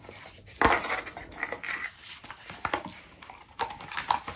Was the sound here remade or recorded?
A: recorded